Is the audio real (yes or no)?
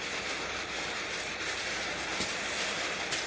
no